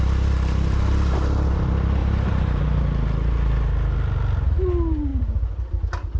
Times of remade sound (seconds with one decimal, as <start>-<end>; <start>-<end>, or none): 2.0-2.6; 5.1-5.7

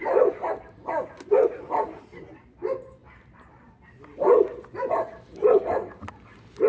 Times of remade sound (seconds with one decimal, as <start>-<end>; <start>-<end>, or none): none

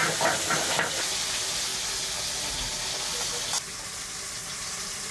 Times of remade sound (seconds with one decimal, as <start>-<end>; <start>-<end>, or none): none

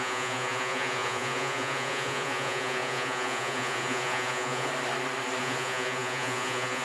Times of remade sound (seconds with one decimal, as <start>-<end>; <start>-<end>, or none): 0.0-4.7; 5.4-6.8